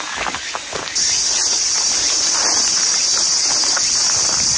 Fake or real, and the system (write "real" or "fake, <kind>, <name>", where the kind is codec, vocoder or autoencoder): real